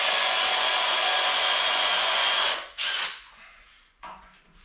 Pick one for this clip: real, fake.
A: fake